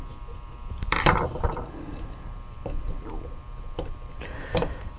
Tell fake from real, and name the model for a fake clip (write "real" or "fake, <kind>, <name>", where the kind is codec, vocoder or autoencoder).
fake, vocoder, BigVGAN v2